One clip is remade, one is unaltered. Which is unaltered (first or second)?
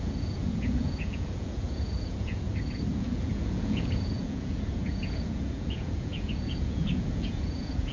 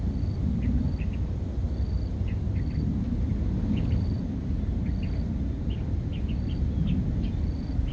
second